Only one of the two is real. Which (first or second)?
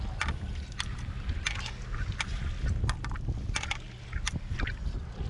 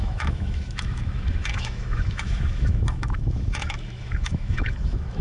first